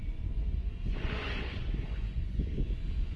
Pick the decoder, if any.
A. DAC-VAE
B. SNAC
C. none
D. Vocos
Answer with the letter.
D